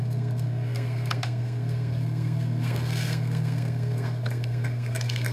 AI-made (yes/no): yes